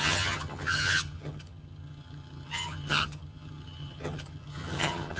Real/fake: fake